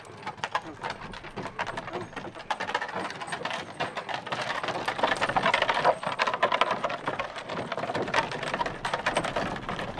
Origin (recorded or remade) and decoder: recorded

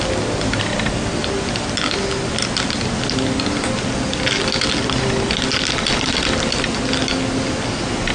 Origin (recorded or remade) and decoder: recorded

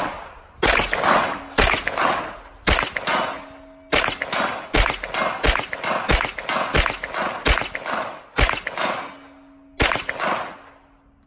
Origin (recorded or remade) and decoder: recorded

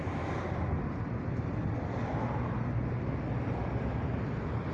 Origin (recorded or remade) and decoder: recorded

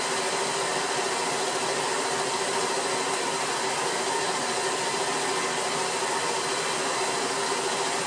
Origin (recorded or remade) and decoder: recorded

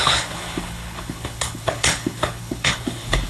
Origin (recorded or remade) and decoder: remade, codec, HILCodec